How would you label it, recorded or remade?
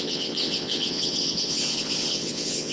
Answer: remade